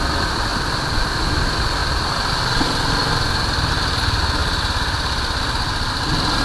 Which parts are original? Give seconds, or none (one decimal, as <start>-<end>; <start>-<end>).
0.0-0.5; 1.2-6.4